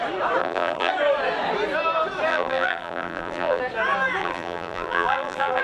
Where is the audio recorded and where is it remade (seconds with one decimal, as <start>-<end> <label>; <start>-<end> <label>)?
0.0-0.4 recorded; 0.4-0.9 remade; 0.9-2.3 recorded; 2.3-3.6 remade; 3.6-4.2 recorded; 4.2-5.6 remade